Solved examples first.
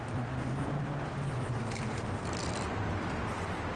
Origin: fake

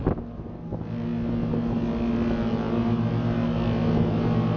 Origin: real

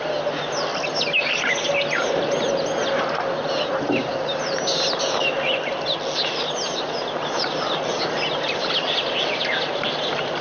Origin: real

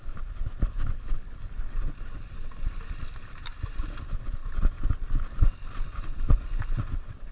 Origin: fake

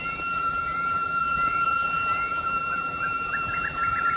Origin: fake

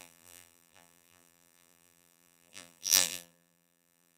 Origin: fake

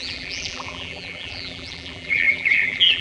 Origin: fake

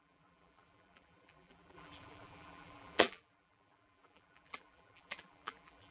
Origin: fake